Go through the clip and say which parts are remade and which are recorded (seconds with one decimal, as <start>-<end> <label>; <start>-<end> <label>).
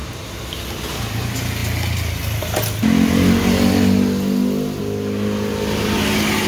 0.0-6.5 recorded